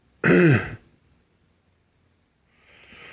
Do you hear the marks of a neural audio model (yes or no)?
no